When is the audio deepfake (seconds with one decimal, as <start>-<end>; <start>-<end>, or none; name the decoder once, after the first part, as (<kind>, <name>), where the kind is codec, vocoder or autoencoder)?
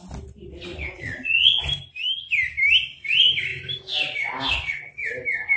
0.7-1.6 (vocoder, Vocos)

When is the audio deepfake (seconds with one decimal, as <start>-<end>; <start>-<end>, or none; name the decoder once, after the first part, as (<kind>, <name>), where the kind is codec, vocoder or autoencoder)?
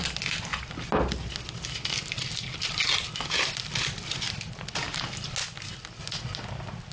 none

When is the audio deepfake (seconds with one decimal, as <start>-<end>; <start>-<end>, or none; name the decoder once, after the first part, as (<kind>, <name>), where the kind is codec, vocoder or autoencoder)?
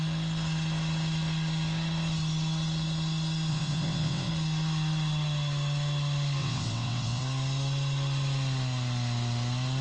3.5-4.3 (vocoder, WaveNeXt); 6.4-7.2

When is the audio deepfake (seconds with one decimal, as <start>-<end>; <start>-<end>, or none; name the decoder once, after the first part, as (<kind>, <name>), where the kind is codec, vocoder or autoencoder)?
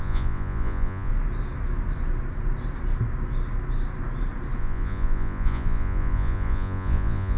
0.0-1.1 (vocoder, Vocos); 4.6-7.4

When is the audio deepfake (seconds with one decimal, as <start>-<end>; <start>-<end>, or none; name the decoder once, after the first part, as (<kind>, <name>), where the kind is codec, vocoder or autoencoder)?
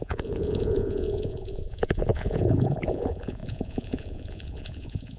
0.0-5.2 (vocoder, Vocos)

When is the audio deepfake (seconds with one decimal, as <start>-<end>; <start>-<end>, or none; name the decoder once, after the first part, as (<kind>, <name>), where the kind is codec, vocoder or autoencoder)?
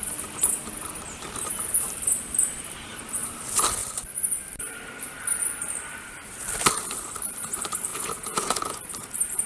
7.9-8.8 (vocoder, Vocos)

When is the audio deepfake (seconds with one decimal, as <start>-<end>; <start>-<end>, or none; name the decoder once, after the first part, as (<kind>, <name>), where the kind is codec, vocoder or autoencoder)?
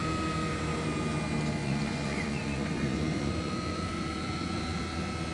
1.6-4.8 (vocoder, Vocos)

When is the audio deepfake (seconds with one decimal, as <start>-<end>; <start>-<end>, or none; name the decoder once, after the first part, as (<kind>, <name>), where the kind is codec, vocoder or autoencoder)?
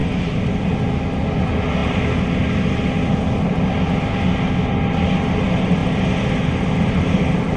none